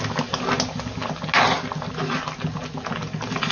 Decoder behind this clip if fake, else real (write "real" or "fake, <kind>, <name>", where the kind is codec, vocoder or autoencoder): real